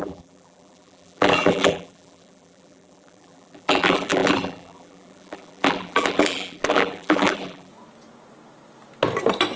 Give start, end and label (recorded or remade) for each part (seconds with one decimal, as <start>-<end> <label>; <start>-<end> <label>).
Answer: 0.0-7.7 remade; 7.7-9.6 recorded